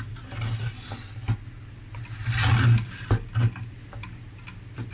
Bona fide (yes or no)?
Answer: yes